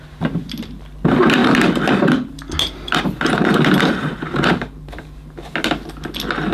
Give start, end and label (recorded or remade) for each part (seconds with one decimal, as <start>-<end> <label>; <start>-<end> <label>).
0.0-4.0 recorded; 4.0-5.4 remade; 5.4-6.5 recorded